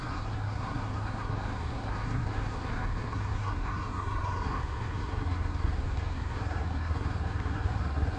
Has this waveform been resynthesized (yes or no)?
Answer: yes